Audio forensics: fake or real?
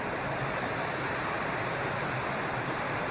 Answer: real